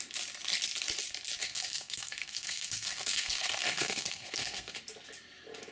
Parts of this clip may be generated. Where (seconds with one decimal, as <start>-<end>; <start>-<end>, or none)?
1.4-4.8